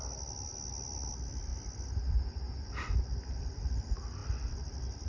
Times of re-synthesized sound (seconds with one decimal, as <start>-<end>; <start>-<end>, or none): none